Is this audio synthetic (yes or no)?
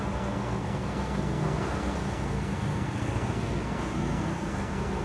yes